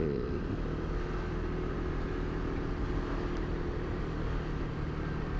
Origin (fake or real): real